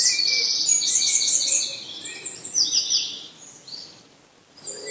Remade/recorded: recorded